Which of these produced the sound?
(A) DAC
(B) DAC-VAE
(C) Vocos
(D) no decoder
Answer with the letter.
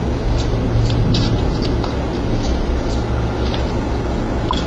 D